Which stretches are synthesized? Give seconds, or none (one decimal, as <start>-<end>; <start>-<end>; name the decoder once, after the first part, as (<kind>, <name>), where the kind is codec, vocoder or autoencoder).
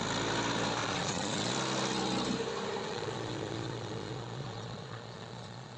0.8-1.5 (vocoder, Vocos); 2.8-5.8